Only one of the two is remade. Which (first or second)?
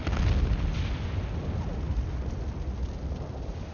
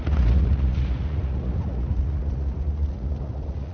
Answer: second